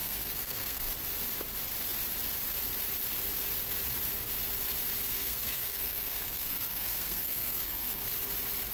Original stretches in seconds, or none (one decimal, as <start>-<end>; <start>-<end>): 0.9-5.1; 8.0-8.7